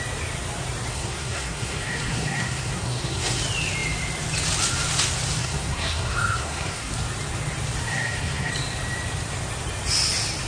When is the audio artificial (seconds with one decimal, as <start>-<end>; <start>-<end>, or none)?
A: 0.9-3.4; 5.4-6.9; 7.9-8.5